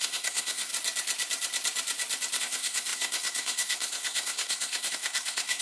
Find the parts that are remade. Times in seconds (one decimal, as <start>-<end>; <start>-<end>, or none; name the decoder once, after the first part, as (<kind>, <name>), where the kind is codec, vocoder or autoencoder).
0.0-0.7 (codec, SNAC); 2.4-5.6